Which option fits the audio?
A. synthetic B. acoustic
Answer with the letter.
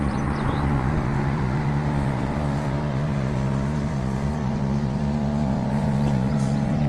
A